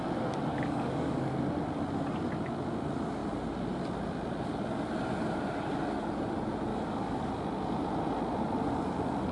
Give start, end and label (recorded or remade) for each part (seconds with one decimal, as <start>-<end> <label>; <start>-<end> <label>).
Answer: 0.0-0.5 recorded; 0.5-1.3 remade; 1.3-6.7 recorded; 6.7-7.3 remade; 7.3-9.3 recorded